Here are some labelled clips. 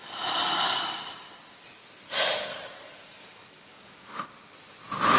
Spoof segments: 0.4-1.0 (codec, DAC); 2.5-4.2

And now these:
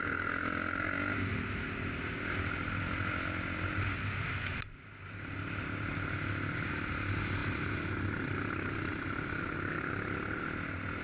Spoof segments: none

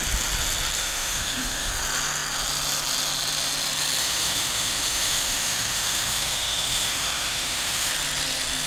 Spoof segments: 0.8-1.7 (autoencoder, DAC-VAE); 4.0-7.9

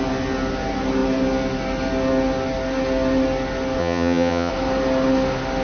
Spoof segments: 3.8-4.5 (vocoder, HiFi-GAN)

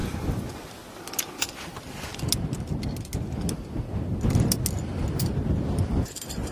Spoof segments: 1.4-2.1 (vocoder, BigVGAN v2); 5.2-6.5

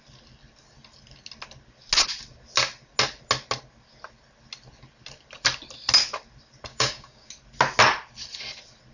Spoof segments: 6.7-7.3 (codec, DAC)

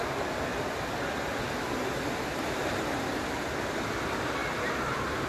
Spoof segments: none

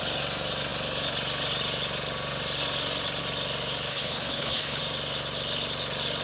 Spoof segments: 3.9-4.8 (codec, HILCodec)